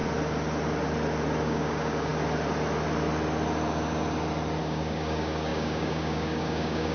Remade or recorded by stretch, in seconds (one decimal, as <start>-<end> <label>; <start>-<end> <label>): 0.0-1.4 recorded; 1.4-2.1 remade; 2.1-4.6 recorded; 4.6-6.9 remade